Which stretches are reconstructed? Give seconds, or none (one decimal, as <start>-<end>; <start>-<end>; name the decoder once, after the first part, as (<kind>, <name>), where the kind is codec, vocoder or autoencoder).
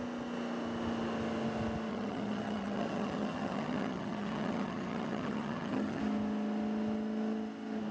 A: 1.9-6.0 (vocoder, HiFi-GAN)